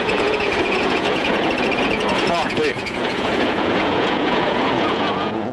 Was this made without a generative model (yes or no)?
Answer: no